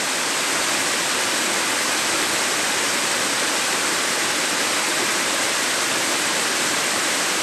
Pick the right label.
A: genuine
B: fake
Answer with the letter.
B